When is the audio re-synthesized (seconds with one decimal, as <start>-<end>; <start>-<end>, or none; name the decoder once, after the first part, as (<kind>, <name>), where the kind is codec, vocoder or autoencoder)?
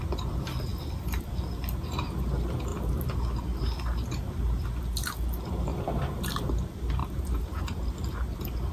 5.7-6.6 (vocoder, BigVGAN v2); 7.0-7.9